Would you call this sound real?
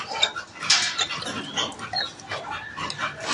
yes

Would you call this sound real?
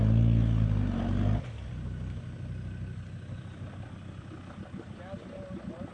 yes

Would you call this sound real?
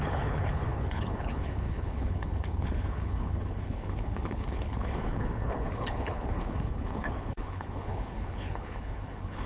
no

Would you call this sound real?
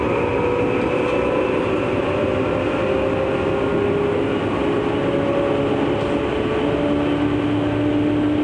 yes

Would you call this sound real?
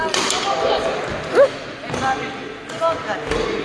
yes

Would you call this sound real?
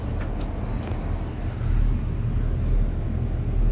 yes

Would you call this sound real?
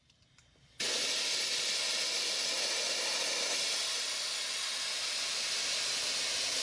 yes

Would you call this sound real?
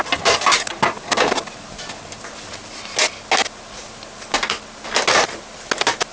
yes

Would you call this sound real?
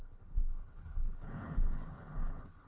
no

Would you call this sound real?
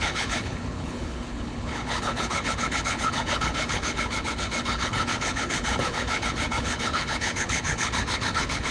no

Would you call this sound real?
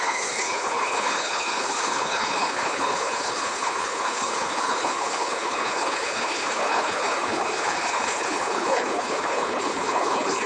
no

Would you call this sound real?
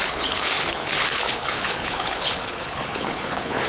no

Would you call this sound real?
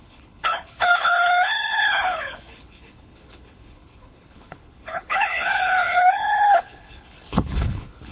no